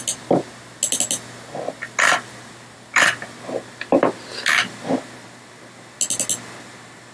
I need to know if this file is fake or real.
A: real